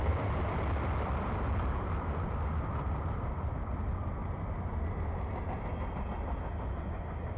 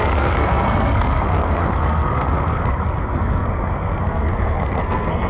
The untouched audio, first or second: first